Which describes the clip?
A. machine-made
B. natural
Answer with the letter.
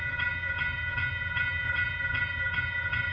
A